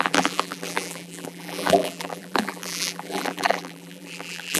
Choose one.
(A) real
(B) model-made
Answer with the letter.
B